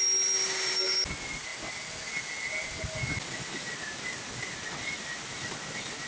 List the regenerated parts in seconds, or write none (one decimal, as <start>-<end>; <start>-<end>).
none